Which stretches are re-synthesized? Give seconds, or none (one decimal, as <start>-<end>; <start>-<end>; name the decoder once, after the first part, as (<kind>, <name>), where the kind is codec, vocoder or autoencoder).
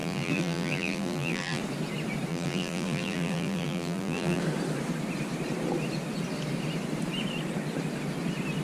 0.0-1.6 (vocoder, BigVGAN v2); 2.3-4.4